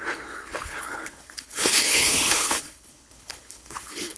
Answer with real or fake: fake